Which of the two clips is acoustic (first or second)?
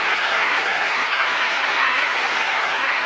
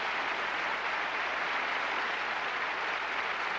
second